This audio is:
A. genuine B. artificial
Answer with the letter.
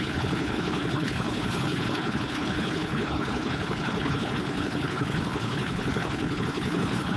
B